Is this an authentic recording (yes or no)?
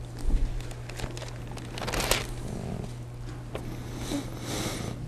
yes